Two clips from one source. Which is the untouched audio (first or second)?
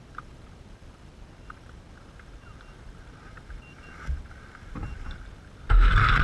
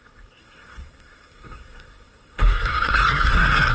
first